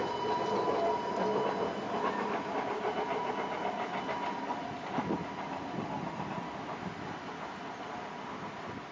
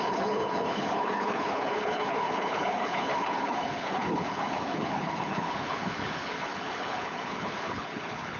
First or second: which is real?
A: first